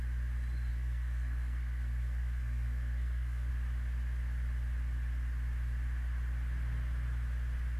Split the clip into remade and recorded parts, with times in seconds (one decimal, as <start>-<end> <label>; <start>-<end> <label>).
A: 0.0-0.7 recorded; 0.7-3.5 remade; 3.5-7.8 recorded